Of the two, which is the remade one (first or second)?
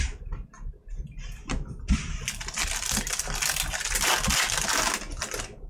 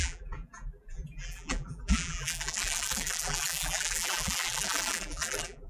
second